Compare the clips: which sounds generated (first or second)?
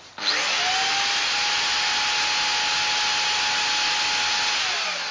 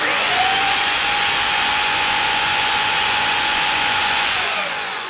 second